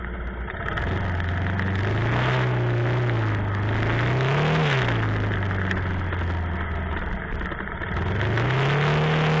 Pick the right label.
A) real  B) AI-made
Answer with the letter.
A